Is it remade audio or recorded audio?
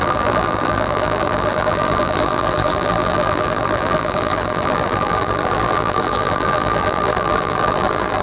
remade